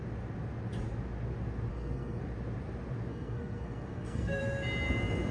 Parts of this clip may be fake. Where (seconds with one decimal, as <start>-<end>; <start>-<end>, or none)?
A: 1.7-2.2; 3.1-4.4